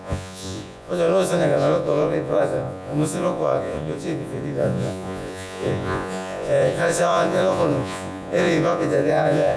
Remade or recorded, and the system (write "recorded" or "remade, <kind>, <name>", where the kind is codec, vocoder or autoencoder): remade, vocoder, Vocos